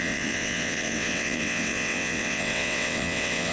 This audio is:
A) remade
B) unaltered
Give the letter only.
A